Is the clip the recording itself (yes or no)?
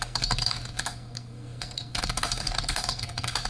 no